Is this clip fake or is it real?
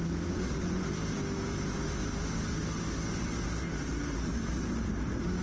real